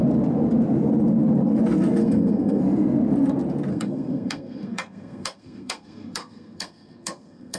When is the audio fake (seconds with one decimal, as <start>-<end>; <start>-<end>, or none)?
2.0-2.6; 3.7-7.6